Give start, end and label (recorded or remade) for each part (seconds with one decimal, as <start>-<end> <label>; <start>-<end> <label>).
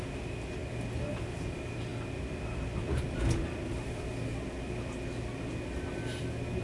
0.0-1.9 recorded; 1.9-5.9 remade; 5.9-6.6 recorded